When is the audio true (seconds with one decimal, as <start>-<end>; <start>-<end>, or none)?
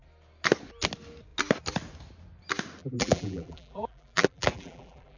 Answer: 0.0-2.8